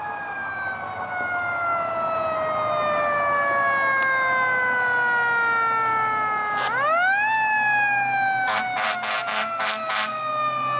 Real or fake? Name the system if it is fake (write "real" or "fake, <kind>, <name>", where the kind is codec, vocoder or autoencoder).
real